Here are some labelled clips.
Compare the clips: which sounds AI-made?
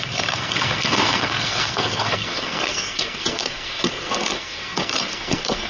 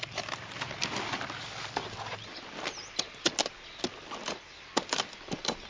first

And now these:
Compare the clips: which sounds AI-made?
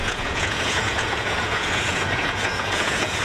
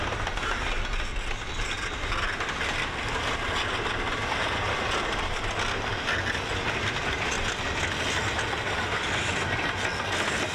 first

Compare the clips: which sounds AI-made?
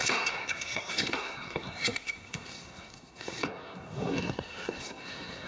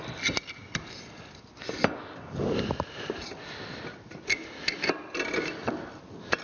first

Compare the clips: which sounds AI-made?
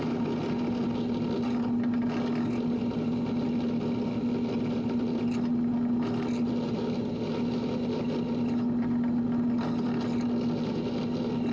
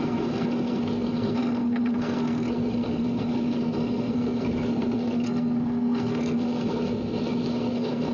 second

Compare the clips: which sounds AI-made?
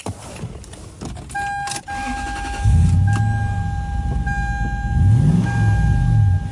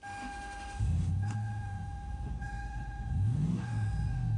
second